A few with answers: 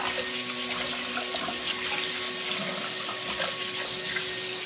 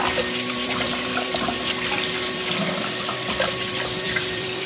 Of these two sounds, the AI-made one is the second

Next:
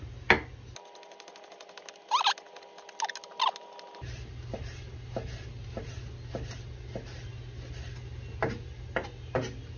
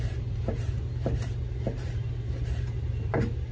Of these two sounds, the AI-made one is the second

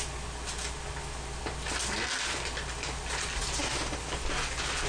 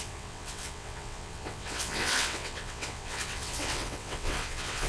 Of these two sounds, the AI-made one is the second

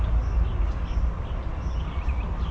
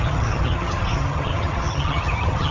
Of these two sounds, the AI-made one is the second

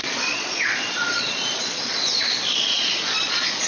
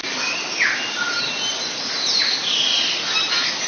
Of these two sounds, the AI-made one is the first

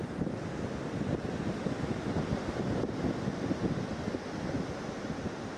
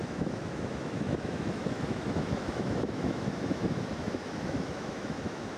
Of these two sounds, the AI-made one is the second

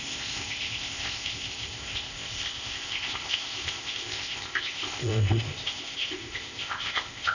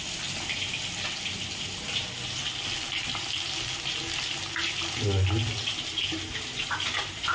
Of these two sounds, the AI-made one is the first